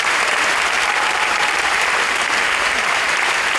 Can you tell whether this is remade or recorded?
remade